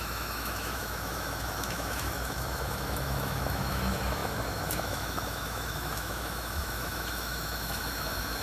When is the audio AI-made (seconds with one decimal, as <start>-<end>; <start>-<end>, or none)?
0.0-8.4